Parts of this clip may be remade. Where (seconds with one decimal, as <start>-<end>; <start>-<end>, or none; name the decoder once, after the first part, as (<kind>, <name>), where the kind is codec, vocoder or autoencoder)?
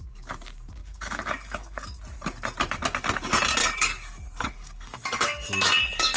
0.8-2.0 (codec, DAC); 3.6-6.2